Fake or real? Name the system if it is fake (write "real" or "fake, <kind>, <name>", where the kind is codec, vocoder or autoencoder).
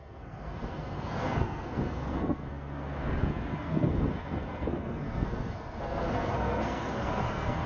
fake, codec, SNAC